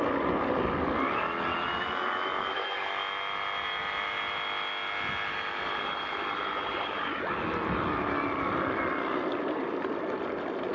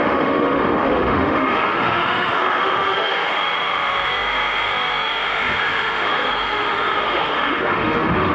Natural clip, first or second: first